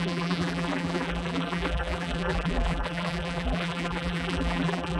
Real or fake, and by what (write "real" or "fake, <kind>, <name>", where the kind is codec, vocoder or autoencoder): fake, vocoder, BigVGAN v2